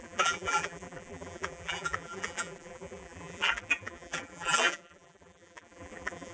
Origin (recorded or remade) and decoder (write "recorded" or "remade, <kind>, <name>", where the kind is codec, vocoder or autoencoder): remade, vocoder, BigVGAN v2